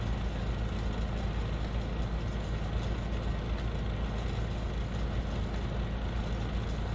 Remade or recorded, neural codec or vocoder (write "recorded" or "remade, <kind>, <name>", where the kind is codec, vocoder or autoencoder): recorded